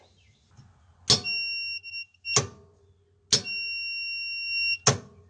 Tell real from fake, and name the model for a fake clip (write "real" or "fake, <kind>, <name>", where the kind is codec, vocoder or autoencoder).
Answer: real